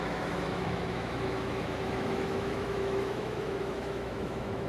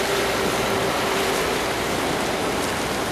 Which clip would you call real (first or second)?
second